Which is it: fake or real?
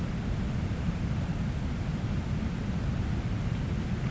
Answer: real